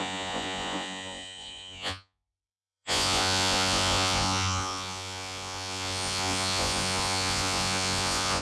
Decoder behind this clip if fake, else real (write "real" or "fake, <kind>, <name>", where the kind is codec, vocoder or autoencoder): fake, vocoder, Vocos